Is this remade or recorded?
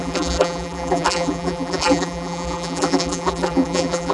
remade